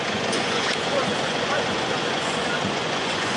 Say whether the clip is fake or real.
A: fake